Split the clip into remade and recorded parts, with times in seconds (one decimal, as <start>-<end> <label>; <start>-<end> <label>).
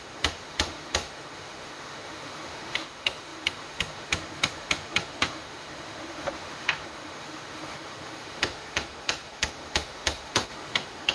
0.0-11.1 remade